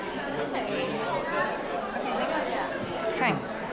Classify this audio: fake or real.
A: real